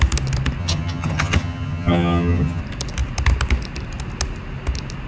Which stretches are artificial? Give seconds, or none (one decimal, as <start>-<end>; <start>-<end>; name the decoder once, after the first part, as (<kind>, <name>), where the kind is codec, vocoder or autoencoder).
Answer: 0.6-2.6 (vocoder, HiFi-GAN)